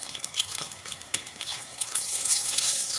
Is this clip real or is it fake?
fake